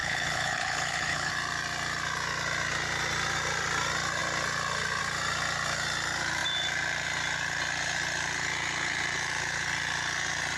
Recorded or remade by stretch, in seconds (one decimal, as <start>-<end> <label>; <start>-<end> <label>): 0.0-1.3 remade; 1.3-10.6 recorded